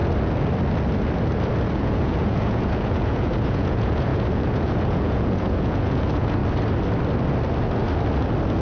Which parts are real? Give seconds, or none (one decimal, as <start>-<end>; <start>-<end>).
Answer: 0.0-1.6; 6.4-8.6